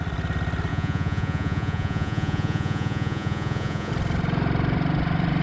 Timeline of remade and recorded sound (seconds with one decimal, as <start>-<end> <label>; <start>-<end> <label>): 0.0-0.7 recorded; 0.7-3.9 remade; 3.9-5.4 recorded